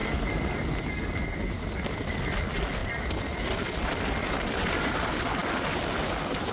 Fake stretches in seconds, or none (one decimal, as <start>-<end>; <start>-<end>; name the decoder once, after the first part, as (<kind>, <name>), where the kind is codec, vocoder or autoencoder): none